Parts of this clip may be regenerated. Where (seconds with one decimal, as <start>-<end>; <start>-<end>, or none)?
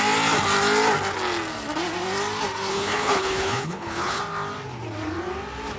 2.7-4.2